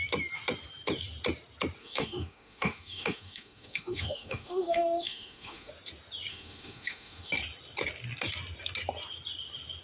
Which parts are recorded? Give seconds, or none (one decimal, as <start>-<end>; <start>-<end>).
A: 0.0-1.8; 5.7-6.3; 7.3-9.8